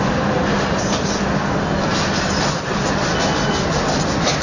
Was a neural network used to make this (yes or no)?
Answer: no